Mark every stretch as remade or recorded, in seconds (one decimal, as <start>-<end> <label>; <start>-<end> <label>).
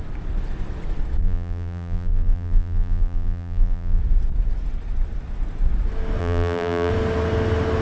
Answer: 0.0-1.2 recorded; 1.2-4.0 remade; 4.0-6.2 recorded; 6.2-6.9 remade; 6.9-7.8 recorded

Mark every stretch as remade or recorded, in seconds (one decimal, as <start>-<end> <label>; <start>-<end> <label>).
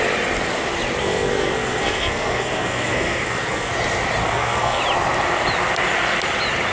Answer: 0.0-1.0 recorded; 1.0-3.7 remade; 3.7-4.2 recorded; 4.2-4.8 remade; 4.8-6.7 recorded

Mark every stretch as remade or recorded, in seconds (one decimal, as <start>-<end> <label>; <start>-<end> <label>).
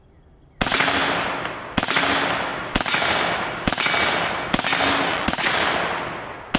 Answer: 0.0-5.1 recorded; 5.1-5.6 remade; 5.6-6.6 recorded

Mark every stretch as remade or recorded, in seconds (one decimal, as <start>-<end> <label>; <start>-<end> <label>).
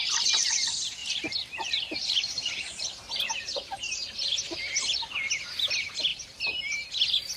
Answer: 0.0-1.0 recorded; 1.0-2.7 remade; 2.7-6.1 recorded; 6.1-6.9 remade; 6.9-7.4 recorded